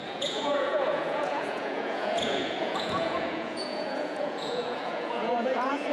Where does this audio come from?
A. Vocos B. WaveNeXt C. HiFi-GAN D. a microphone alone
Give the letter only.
A